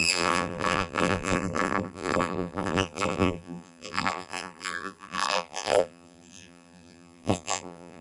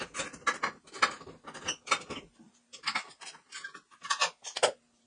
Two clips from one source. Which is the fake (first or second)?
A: first